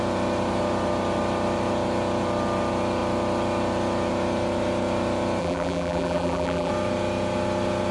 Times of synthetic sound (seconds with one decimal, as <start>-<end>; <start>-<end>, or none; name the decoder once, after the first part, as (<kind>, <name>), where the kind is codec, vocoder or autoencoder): 5.4-6.7 (vocoder, BigVGAN v2)